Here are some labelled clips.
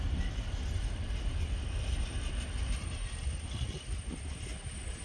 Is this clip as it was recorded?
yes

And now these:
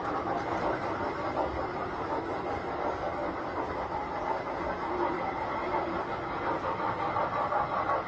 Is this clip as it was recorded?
yes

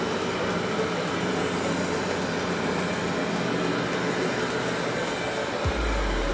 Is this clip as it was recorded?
yes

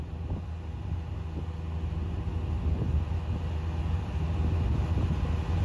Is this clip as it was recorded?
yes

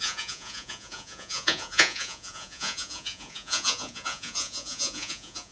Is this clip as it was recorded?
no